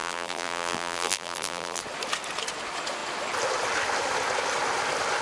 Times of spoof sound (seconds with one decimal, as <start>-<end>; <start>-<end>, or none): 0.0-1.8